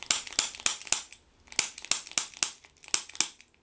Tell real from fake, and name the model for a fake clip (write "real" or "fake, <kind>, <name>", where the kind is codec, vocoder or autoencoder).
real